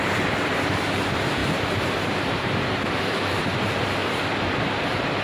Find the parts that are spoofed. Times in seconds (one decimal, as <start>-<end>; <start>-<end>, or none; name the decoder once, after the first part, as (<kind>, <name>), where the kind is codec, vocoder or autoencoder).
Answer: 0.0-4.0 (vocoder, BigVGAN v2); 4.5-5.2